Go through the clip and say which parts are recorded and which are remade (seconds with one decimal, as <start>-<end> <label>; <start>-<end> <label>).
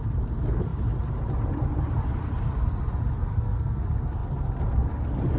0.0-3.3 recorded; 3.3-3.8 remade; 3.8-5.4 recorded